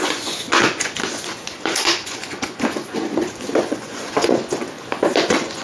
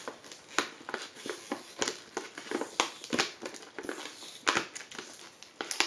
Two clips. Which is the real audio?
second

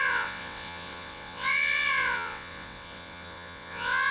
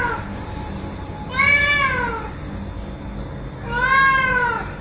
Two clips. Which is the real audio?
second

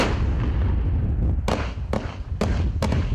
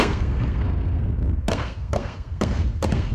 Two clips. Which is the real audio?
first